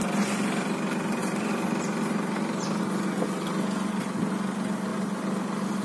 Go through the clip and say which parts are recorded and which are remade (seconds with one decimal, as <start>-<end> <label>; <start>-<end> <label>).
0.0-1.2 recorded; 1.2-2.8 remade; 2.8-5.8 recorded